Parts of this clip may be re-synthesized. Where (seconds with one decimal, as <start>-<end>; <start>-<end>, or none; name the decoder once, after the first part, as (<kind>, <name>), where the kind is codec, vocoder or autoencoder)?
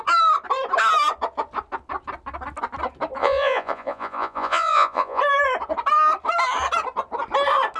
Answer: 3.2-5.2 (vocoder, Vocos)